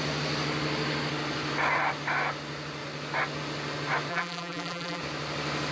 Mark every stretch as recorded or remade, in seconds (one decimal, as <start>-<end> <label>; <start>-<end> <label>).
0.0-4.1 recorded; 4.1-5.0 remade; 5.0-5.7 recorded

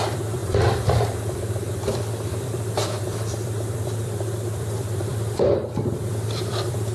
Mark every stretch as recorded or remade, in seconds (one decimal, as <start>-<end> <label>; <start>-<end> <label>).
0.0-6.9 remade

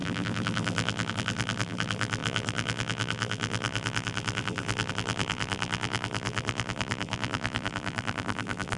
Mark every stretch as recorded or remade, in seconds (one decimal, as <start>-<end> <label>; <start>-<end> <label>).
0.0-8.8 remade

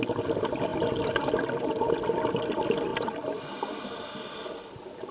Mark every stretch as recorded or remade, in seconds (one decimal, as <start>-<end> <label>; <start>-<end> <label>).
0.0-2.9 recorded; 2.9-4.4 remade; 4.4-5.1 recorded

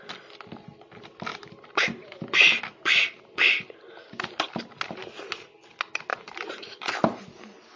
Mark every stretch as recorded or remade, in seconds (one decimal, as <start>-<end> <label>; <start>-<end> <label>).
0.0-1.3 recorded; 1.3-4.5 remade; 4.5-6.1 recorded; 6.1-7.2 remade; 7.2-7.8 recorded